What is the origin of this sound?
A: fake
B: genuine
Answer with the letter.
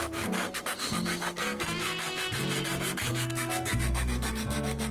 A